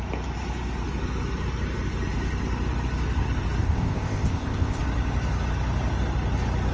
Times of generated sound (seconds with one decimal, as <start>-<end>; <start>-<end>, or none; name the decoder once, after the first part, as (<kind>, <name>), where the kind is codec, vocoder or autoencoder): 3.6-4.8 (codec, ZipCodec)